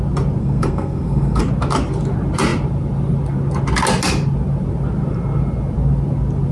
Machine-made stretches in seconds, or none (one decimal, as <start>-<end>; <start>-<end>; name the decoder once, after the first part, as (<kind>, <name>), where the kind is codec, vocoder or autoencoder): 0.4-1.4 (codec, SNAC)